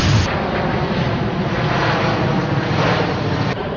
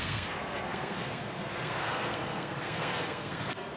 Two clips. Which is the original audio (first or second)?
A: first